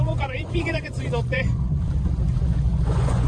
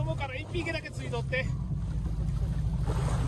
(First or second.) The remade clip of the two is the first